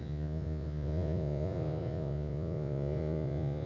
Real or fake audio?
fake